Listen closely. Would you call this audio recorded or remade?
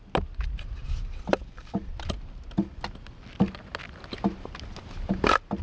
recorded